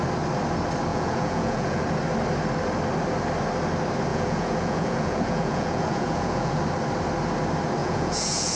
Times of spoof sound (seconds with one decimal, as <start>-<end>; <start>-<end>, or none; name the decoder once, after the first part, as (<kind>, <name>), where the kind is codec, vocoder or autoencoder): 0.9-1.8 (vocoder, Vocos); 4.1-6.6; 7.8-8.6